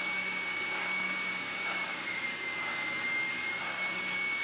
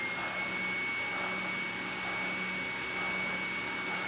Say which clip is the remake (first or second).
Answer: first